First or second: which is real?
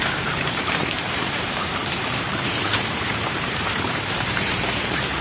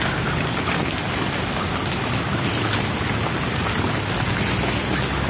second